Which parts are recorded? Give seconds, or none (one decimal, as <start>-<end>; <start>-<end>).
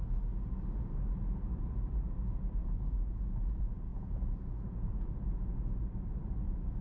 0.0-2.6; 3.2-3.9; 5.8-6.8